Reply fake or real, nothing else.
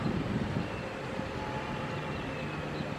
real